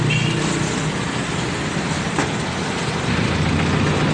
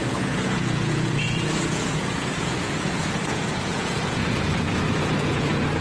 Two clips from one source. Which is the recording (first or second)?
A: first